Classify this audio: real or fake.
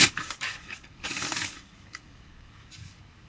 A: fake